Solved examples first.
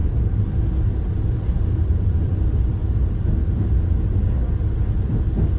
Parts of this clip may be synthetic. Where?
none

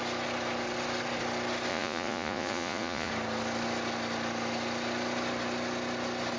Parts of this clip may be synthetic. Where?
1.7-3.1

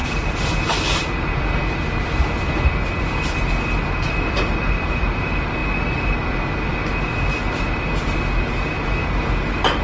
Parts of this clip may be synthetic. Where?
none

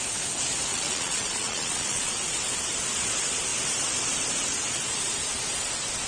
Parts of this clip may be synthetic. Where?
0.7-2.1

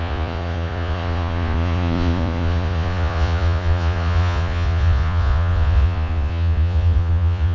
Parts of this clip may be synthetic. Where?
0.0-7.5

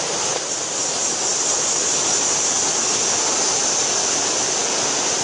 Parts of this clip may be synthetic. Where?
none

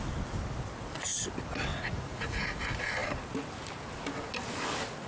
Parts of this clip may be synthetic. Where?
1.7-2.6